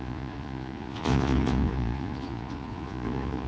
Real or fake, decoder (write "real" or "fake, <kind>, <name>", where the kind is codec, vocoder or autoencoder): fake, vocoder, Vocos